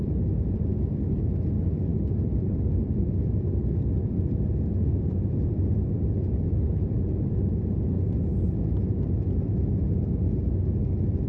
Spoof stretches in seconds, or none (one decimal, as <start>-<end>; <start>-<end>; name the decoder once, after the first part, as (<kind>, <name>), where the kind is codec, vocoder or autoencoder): none